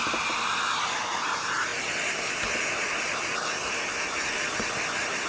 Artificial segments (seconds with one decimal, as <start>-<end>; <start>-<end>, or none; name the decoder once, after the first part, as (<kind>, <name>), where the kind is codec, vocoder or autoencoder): none